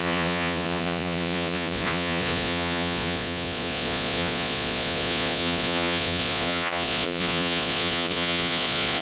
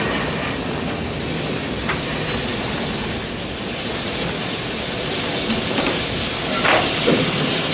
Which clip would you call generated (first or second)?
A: first